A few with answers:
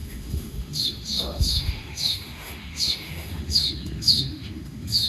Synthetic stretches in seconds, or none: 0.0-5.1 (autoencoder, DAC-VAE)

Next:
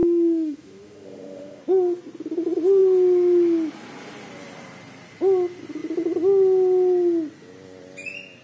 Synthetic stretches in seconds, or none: 0.0-1.6 (autoencoder, DAC-VAE)

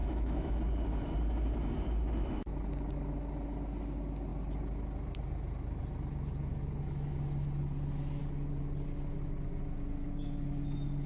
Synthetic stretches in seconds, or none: 0.0-0.6 (autoencoder, DAC-VAE)

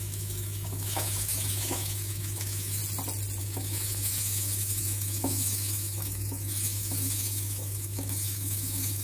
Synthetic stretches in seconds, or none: 0.0-2.8 (autoencoder, DAC-VAE); 3.4-9.0